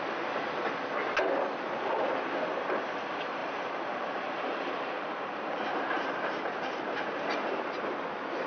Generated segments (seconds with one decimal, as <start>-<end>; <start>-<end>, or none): 3.4-7.7